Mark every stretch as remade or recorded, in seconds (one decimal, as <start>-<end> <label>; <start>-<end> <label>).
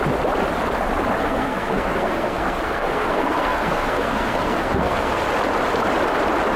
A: 0.0-1.2 recorded; 1.2-5.2 remade; 5.2-6.6 recorded